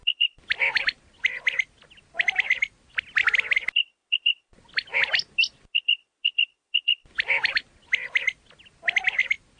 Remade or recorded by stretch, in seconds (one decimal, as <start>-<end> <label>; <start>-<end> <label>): 0.0-9.6 recorded